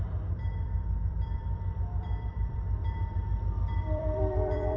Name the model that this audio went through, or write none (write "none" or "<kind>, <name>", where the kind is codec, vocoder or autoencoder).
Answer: vocoder, BigVGAN v2